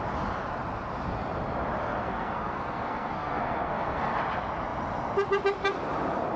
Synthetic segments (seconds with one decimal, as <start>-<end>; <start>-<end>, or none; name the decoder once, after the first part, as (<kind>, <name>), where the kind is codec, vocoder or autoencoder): 2.0-4.2 (codec, SNAC)